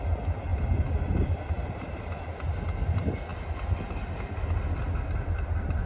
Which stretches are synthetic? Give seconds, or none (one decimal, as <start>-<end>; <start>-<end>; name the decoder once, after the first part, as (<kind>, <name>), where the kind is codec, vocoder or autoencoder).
0.5-2.2 (vocoder, BigVGAN v2)